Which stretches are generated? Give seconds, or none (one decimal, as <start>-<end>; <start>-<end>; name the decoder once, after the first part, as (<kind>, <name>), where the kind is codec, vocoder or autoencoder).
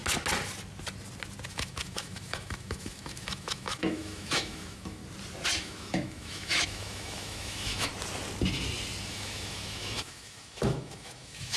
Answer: 1.5-5.0 (autoencoder, DAC-VAE); 5.6-7.9; 9.1-11.6